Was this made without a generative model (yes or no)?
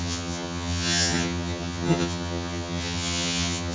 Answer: no